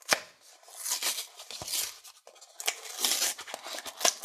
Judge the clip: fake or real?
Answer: real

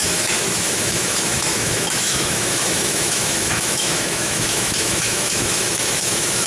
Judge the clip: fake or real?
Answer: fake